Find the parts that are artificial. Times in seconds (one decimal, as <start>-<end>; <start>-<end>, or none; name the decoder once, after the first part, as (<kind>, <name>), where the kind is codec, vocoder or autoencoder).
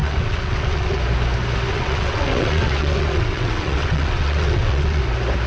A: 0.0-1.0 (vocoder, WaveNeXt); 1.7-5.0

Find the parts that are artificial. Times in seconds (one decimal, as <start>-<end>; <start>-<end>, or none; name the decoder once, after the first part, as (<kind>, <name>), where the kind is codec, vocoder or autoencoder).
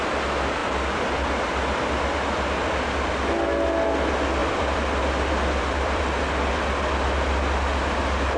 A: 0.6-3.2 (vocoder, BigVGAN v2); 4.4-6.0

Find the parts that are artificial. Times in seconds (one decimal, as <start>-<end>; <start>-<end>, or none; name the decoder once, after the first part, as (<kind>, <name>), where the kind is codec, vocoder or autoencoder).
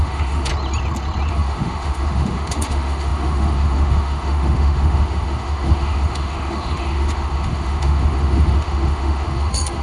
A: 0.0-0.5 (autoencoder, DAC-VAE); 1.3-9.8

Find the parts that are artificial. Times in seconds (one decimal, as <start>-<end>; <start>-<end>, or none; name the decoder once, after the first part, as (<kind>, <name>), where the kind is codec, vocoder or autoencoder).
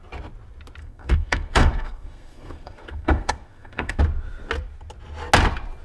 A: 0.8-4.0 (codec, SNAC)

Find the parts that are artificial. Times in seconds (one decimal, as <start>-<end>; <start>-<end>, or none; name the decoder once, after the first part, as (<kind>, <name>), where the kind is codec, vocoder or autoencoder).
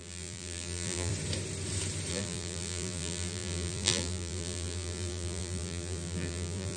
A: 0.0-1.1 (vocoder, BigVGAN v2); 2.1-6.8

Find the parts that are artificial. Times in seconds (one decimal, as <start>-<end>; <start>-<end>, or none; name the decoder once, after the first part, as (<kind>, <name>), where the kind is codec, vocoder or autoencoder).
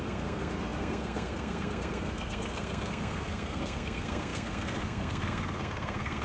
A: 0.0-6.2 (codec, SNAC)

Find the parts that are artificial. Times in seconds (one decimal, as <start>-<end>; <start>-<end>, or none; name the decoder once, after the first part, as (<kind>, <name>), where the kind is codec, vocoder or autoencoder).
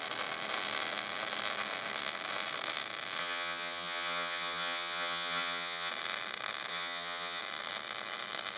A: 3.2-5.9 (vocoder, HiFi-GAN); 6.7-7.4